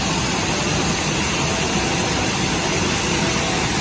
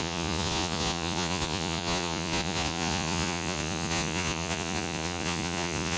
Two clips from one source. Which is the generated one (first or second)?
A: second